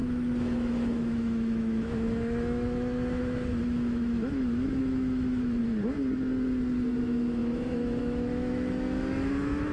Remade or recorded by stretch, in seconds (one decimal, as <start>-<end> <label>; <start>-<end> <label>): 0.0-5.6 remade; 5.6-7.0 recorded; 7.0-9.7 remade